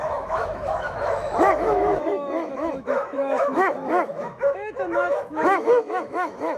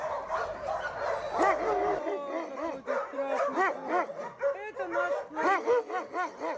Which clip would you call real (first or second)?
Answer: second